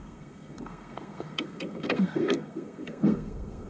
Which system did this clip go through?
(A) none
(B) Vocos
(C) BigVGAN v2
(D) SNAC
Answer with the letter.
D